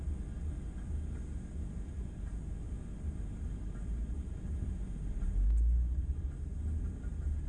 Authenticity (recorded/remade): recorded